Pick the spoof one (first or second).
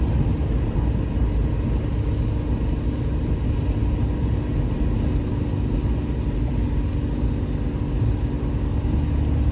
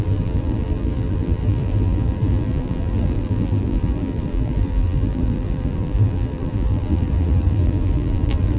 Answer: second